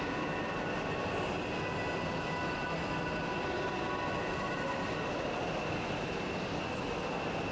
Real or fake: real